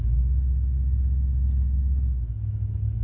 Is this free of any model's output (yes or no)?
yes